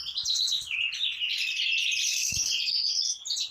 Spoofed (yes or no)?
yes